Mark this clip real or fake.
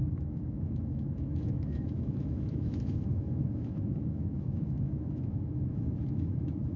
fake